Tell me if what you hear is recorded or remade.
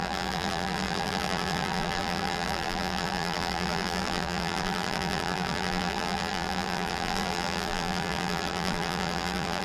remade